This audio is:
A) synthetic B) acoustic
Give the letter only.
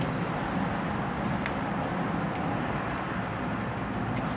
B